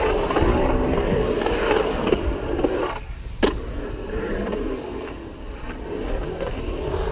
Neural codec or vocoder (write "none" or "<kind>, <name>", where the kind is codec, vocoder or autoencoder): none